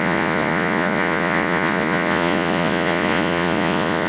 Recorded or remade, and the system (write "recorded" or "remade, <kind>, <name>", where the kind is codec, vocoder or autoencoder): remade, vocoder, Vocos